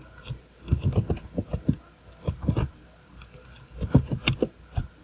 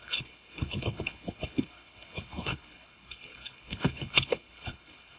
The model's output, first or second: second